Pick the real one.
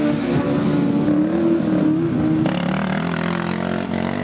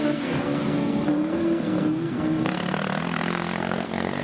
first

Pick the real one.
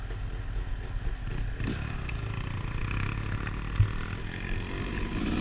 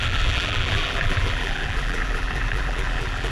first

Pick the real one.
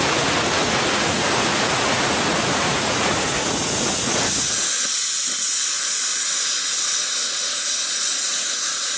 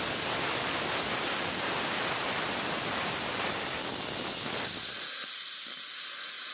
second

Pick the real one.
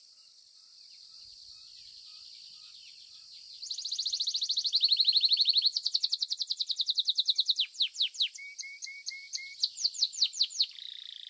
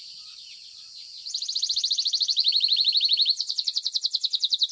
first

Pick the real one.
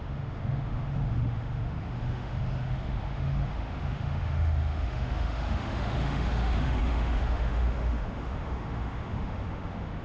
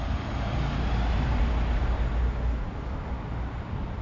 second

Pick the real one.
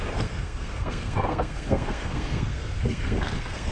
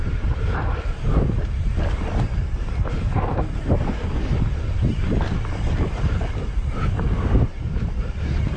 second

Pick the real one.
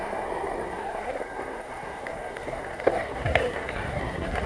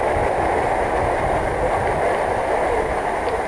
second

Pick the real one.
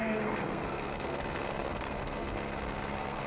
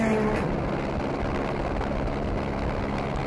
second